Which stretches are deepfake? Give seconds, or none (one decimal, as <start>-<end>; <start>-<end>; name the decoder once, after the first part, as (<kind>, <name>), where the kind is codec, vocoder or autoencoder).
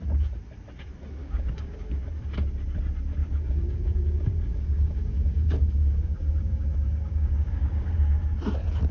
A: 1.2-2.0 (codec, DAC); 3.2-7.9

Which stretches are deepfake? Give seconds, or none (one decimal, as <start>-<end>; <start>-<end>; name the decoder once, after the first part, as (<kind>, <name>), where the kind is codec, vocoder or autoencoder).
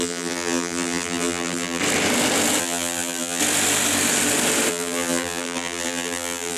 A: 0.0-1.8 (vocoder, BigVGAN v2); 2.6-3.4; 4.7-6.6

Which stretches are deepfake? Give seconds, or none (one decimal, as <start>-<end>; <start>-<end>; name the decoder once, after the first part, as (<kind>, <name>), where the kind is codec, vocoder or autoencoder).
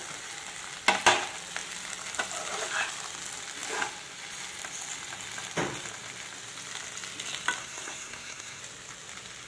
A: 7.6-8.6 (codec, SNAC)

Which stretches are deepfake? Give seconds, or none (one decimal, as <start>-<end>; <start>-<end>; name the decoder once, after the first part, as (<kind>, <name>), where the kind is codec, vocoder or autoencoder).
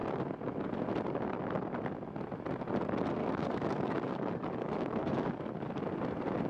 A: 3.2-5.7 (codec, DAC)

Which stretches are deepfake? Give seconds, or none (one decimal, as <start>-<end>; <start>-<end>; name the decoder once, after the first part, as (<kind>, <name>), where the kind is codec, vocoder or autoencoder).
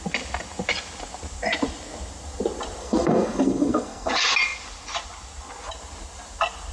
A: 2.8-4.1 (codec, SNAC)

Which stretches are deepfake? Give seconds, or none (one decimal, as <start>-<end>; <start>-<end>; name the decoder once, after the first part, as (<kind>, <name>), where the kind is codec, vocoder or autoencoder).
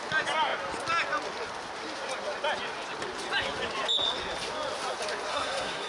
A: 5.3-5.9 (codec, SNAC)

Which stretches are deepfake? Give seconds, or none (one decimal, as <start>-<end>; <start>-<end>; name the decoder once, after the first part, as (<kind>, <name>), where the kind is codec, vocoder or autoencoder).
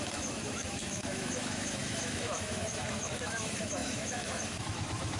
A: 0.0-5.2 (autoencoder, DAC-VAE)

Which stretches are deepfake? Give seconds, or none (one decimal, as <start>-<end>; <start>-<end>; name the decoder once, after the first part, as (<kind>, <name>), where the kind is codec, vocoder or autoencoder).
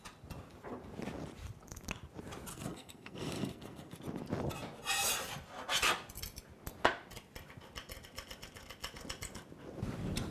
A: 2.5-4.0 (codec, SNAC)